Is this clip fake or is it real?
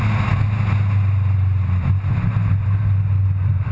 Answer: real